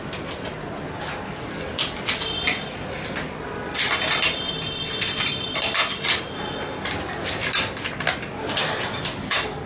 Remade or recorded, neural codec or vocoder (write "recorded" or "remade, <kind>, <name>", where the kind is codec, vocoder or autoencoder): recorded